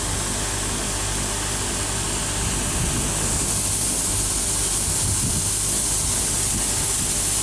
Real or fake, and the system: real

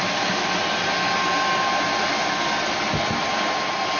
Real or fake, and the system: real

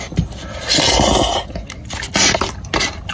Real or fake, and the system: real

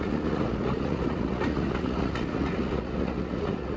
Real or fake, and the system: fake, vocoder, Vocos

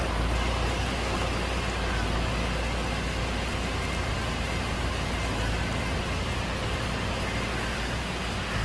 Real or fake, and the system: real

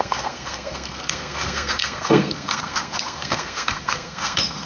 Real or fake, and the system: fake, codec, SNAC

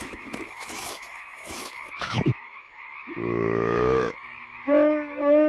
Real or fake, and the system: fake, autoencoder, DAC-VAE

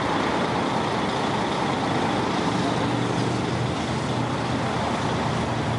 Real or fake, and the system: real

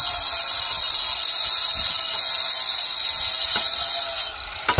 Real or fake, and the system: real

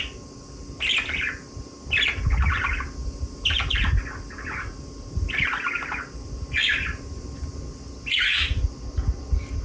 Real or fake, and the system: real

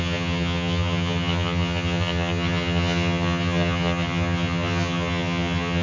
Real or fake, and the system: fake, vocoder, HiFi-GAN